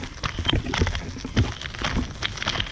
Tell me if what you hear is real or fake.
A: real